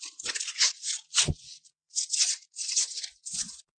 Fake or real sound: fake